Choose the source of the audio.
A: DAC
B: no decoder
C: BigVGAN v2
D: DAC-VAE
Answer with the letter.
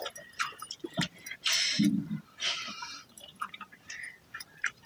C